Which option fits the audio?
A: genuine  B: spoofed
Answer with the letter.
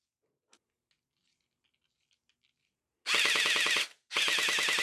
A